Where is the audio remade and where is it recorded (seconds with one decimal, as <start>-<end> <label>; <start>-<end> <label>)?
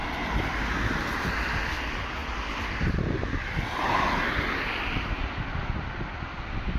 0.0-6.8 recorded